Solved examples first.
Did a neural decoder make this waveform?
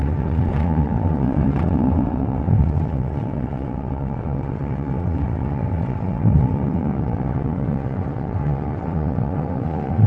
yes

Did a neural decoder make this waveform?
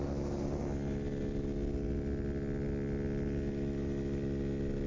no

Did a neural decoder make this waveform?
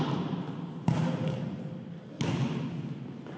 no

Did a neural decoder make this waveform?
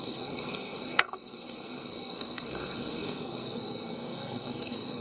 yes